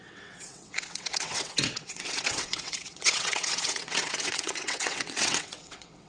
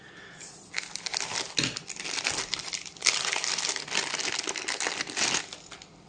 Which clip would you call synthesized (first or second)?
first